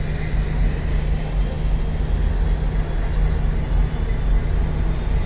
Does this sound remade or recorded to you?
recorded